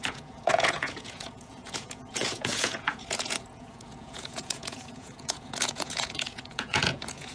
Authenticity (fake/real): fake